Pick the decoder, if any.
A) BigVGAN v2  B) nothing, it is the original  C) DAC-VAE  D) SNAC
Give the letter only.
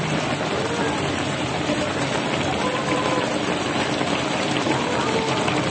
A